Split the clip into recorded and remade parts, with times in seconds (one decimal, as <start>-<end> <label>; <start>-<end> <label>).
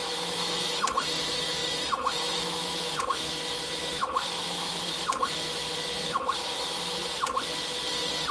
0.0-7.0 remade; 7.0-8.3 recorded